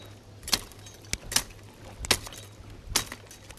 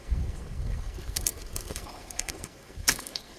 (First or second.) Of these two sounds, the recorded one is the first